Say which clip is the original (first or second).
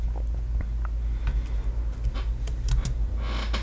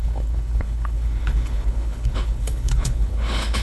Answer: first